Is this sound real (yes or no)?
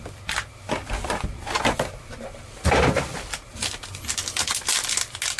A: yes